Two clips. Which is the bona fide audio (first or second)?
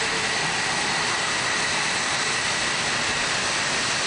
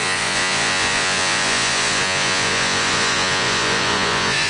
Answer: first